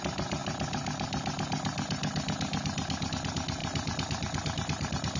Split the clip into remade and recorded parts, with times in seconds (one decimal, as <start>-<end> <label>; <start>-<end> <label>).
0.0-5.2 recorded